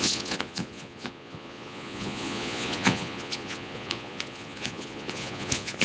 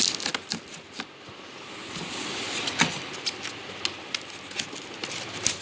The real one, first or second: second